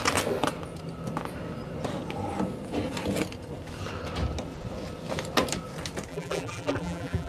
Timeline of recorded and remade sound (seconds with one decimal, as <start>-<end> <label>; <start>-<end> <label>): 0.0-6.1 recorded; 6.1-7.3 remade